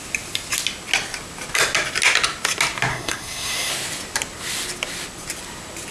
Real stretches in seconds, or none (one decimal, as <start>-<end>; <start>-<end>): 0.0-2.9; 3.7-5.9